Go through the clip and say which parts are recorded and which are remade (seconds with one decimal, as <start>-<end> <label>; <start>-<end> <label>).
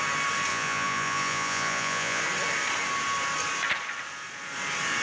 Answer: 0.0-0.5 recorded; 0.5-2.2 remade; 2.2-5.0 recorded